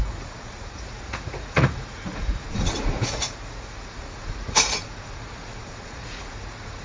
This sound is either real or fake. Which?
fake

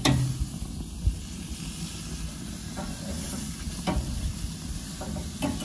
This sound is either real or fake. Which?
real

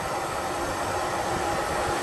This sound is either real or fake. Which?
real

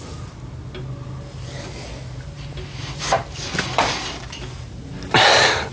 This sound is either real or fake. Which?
real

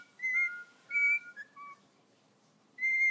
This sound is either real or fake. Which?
real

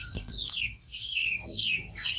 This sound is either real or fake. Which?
fake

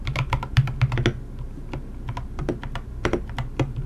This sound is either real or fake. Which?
real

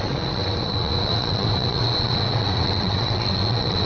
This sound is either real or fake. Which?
fake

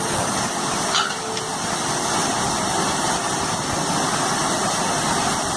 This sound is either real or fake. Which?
real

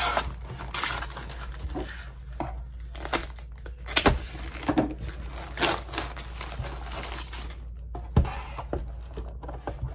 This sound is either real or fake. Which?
real